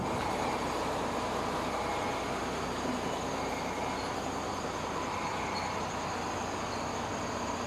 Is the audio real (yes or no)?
yes